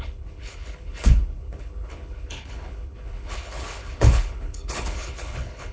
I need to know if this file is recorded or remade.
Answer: remade